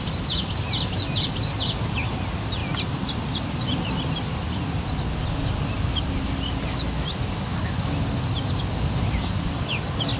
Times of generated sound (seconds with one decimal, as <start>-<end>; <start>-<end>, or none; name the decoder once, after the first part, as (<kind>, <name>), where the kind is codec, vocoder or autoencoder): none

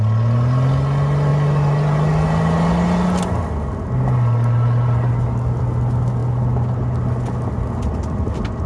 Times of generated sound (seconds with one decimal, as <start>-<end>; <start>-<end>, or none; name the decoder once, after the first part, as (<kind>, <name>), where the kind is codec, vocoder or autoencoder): none

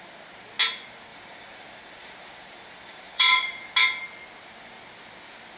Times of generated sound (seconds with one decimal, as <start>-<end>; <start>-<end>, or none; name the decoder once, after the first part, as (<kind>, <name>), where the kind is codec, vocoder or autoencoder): 1.1-3.7 (vocoder, BigVGAN v2)

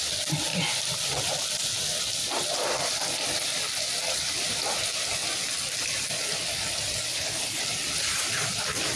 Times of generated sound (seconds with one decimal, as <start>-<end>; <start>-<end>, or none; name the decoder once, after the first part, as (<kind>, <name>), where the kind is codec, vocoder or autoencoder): 7.1-7.6 (codec, HILCodec)